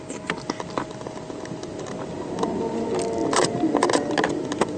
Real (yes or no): yes